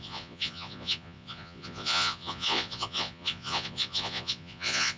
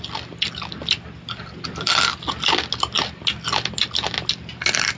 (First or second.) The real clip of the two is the second